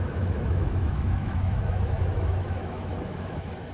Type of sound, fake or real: fake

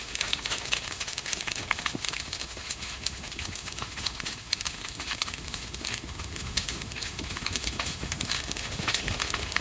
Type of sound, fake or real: fake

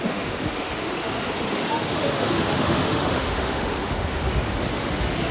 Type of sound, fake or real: fake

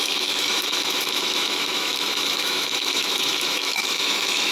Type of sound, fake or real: fake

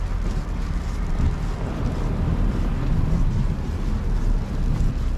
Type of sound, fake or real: real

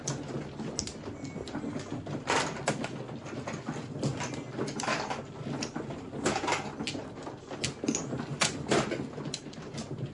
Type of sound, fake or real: real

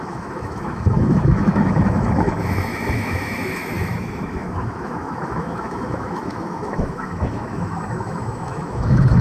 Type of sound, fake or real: fake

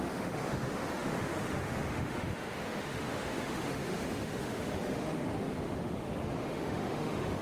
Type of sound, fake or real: fake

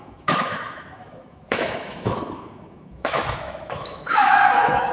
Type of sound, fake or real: fake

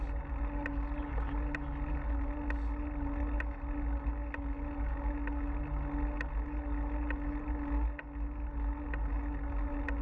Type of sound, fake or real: real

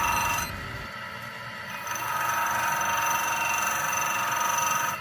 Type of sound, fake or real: real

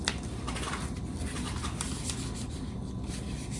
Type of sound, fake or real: real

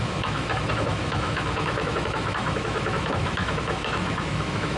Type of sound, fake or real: fake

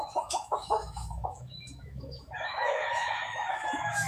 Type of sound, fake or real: fake